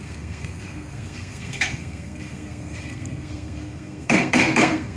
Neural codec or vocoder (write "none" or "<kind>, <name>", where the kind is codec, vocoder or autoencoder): codec, SNAC